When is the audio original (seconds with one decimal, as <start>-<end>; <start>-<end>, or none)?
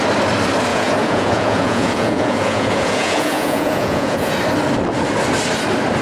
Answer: 0.0-0.7; 4.3-6.0